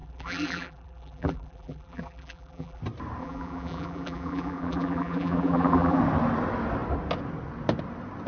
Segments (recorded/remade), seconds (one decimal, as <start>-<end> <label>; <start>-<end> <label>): 0.0-2.8 remade; 2.8-3.2 recorded; 3.2-6.0 remade; 6.0-8.3 recorded